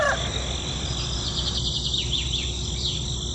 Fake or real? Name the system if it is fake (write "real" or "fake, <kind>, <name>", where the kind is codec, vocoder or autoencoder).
real